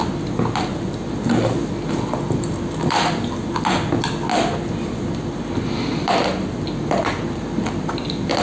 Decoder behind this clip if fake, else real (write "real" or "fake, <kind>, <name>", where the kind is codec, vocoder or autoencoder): real